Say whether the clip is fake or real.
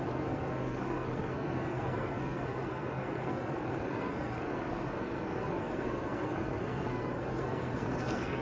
fake